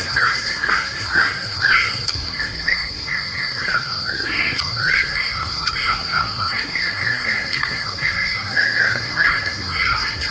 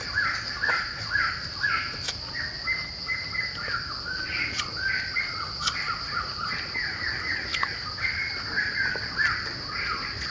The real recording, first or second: second